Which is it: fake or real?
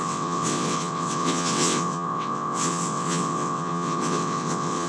fake